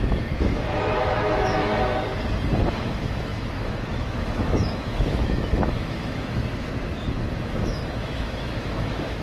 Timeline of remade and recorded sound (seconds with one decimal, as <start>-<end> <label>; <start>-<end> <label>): 0.0-1.7 remade; 1.7-2.8 recorded; 2.8-9.2 remade